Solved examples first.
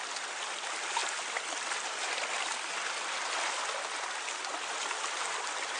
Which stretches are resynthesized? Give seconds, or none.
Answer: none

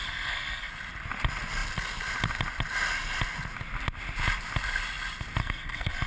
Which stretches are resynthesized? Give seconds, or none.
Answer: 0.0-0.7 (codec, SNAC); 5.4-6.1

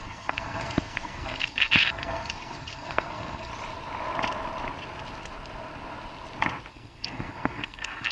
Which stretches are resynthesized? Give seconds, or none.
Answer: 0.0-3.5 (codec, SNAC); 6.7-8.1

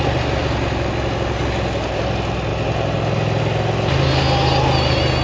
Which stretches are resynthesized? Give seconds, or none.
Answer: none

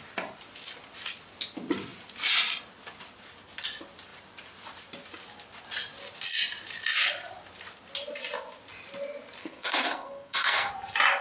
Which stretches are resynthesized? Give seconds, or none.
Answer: 9.4-10.7 (codec, SNAC)

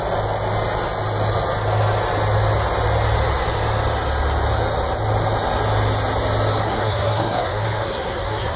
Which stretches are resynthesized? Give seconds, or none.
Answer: 6.6-8.6 (codec, SNAC)